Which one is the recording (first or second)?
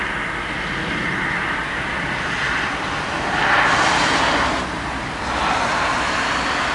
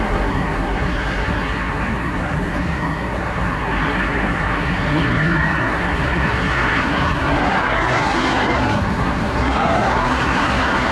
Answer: first